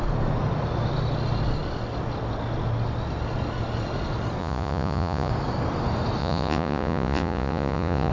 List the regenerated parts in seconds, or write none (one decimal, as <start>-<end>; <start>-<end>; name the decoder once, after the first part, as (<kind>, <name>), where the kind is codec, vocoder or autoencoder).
4.4-5.3 (vocoder, Vocos); 6.2-8.1